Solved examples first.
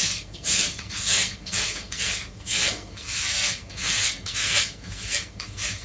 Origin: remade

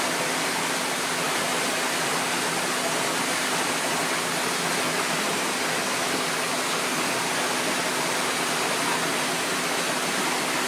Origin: recorded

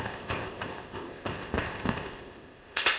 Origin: remade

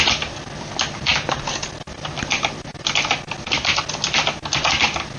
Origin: recorded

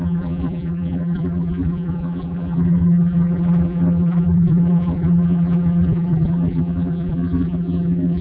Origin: remade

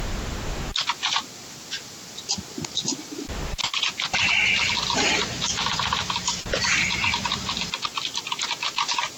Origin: recorded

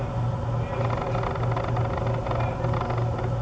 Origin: recorded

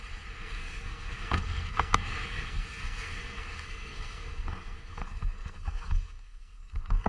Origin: remade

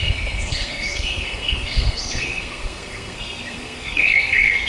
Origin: remade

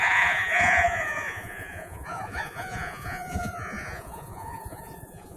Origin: remade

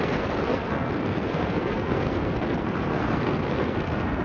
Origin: remade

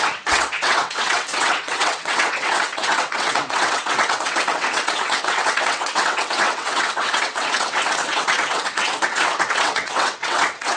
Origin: remade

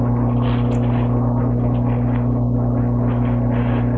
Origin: recorded